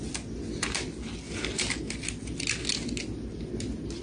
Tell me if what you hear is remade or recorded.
recorded